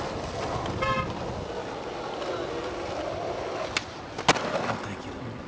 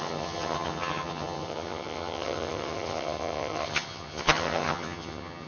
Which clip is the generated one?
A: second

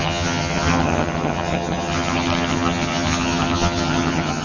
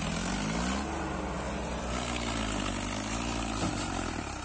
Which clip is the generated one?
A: first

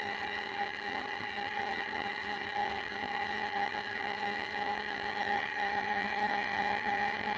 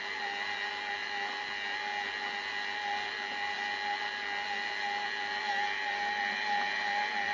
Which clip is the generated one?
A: first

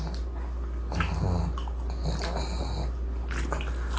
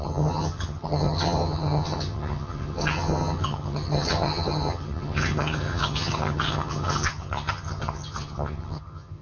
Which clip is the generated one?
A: second